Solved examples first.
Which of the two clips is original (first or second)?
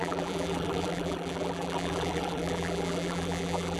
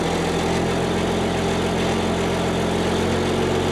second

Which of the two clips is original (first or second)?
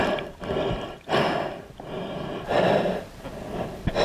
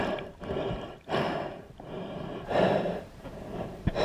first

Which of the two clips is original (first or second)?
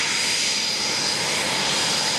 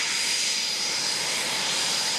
first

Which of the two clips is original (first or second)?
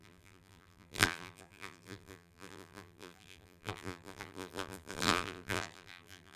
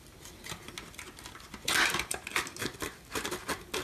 second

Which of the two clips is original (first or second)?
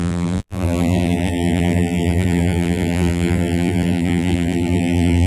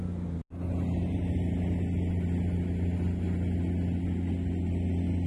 second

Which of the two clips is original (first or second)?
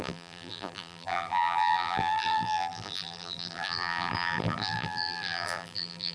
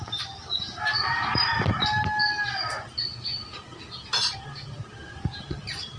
second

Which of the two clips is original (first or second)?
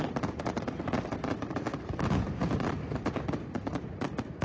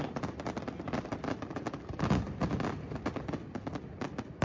second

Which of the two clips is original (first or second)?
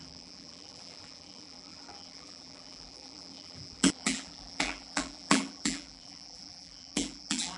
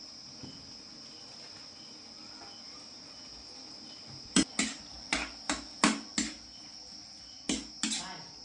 second